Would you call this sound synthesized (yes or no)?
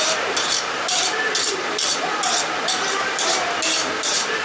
yes